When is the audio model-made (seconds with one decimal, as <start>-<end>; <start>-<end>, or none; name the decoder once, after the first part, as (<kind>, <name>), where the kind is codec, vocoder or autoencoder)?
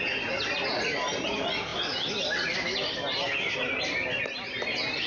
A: none